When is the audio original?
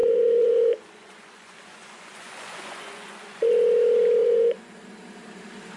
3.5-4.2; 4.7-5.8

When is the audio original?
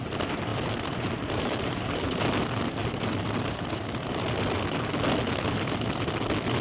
0.0-0.5; 2.2-2.8; 4.9-6.6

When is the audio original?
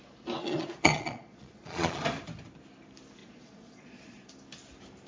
0.0-0.4; 2.0-3.2; 4.3-5.1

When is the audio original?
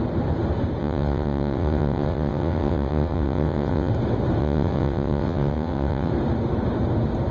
0.0-0.8; 3.9-4.4; 6.1-7.3